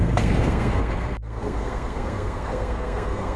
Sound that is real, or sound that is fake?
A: fake